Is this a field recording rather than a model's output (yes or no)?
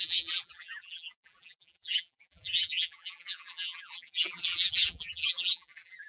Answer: no